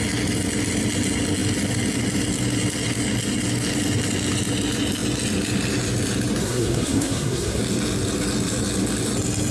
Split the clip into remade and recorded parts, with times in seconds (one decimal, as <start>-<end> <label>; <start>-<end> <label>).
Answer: 0.0-6.4 recorded; 6.4-7.6 remade; 7.6-9.5 recorded